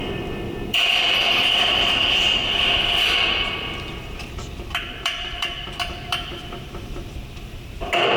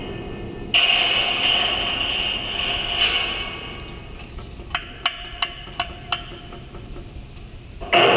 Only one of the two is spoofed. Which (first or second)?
first